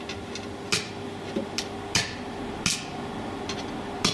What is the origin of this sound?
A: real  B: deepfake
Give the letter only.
A